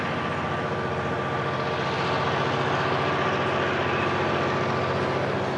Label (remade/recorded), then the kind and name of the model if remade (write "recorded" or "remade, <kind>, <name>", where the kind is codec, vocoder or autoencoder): recorded